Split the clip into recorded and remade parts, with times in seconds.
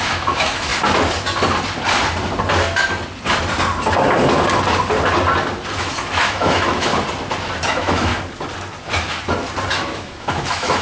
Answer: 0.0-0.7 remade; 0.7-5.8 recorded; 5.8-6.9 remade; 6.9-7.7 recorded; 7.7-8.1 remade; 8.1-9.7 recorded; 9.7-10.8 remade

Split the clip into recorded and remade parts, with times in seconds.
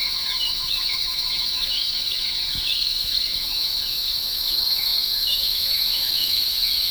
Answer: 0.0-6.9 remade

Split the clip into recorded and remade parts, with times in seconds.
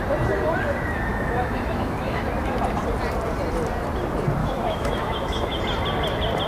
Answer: 0.0-1.1 recorded; 1.1-2.2 remade; 2.2-4.4 recorded; 4.4-5.6 remade; 5.6-6.5 recorded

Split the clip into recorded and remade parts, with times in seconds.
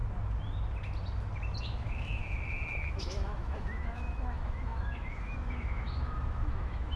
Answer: 0.0-1.6 recorded; 1.6-7.0 remade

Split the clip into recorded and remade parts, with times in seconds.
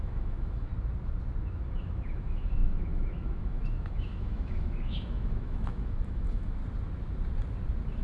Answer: 0.0-0.7 remade; 0.7-1.4 recorded; 1.4-6.6 remade; 6.6-8.0 recorded